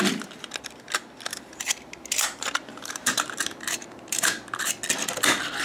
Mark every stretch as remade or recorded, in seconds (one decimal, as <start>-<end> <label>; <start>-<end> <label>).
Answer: 0.0-1.3 recorded; 1.3-4.7 remade; 4.7-5.6 recorded